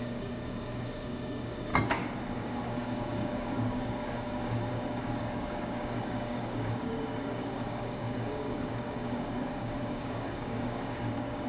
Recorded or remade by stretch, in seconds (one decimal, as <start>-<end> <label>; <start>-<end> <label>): 0.0-1.7 remade; 1.7-2.3 recorded; 2.3-11.5 remade